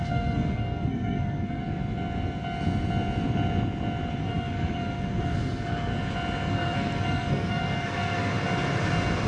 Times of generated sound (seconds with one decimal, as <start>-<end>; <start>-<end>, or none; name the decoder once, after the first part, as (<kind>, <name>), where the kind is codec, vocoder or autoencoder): 0.0-1.6 (codec, SNAC); 4.2-5.9; 6.5-8.3